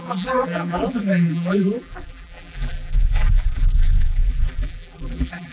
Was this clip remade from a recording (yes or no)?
yes